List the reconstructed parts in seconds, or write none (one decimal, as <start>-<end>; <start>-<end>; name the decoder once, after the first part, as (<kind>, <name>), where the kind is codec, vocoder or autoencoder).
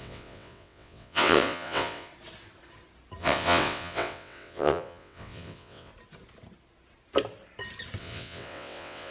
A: 0.0-2.1 (vocoder, WaveNeXt); 3.2-5.9; 8.0-9.1